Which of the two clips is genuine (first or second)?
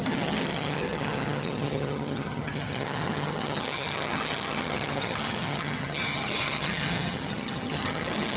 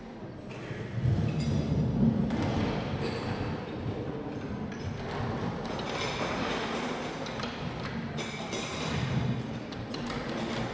second